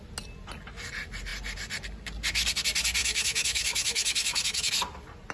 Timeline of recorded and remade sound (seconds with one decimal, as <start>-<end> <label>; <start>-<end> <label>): 0.0-3.0 recorded; 3.0-4.7 remade; 4.7-5.3 recorded